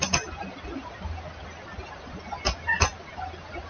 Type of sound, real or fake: real